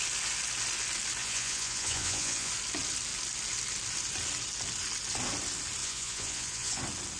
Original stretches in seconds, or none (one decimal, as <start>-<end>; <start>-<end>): 0.0-1.2; 2.5-5.8; 6.8-7.2